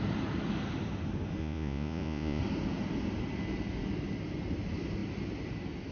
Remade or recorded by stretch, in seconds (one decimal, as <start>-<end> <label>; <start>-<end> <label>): 0.0-1.4 recorded; 1.4-2.4 remade; 2.4-5.9 recorded